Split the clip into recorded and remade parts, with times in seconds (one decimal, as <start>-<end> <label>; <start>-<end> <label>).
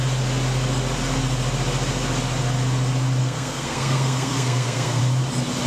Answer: 0.0-3.2 recorded; 3.2-5.0 remade; 5.0-5.7 recorded